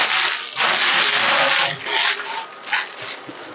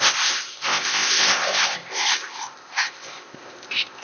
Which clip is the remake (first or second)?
second